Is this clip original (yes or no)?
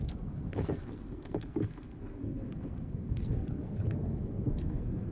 no